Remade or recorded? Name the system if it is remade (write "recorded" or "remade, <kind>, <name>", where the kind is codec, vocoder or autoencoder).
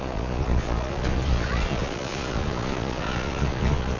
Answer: remade, vocoder, Vocos